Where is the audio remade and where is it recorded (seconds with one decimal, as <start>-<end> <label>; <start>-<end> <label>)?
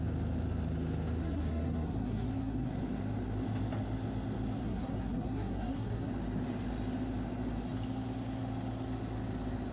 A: 0.0-1.2 recorded; 1.2-2.8 remade; 2.8-4.6 recorded; 4.6-6.1 remade; 6.1-9.7 recorded